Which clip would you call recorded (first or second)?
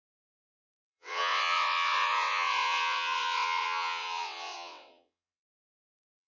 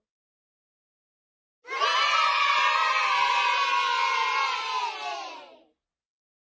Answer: second